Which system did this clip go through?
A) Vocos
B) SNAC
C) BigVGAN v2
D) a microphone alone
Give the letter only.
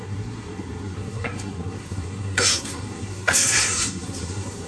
B